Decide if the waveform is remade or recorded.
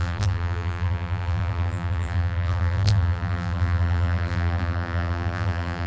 remade